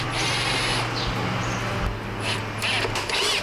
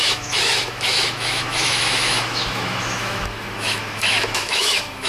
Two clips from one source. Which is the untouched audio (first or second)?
first